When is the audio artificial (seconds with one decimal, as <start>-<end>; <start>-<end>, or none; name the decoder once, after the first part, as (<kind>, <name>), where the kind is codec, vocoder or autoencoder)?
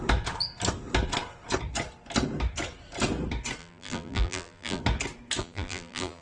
3.6-4.8 (vocoder, BigVGAN v2); 5.4-6.2